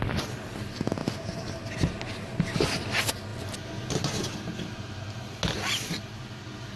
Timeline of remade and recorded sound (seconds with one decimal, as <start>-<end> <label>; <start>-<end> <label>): 0.0-6.8 recorded